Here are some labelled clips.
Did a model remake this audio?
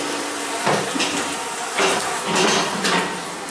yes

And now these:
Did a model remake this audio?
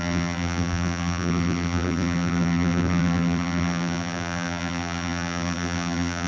yes